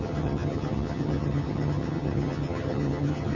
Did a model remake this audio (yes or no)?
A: yes